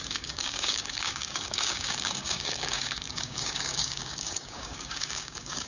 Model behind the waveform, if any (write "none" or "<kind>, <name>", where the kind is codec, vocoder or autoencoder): codec, DAC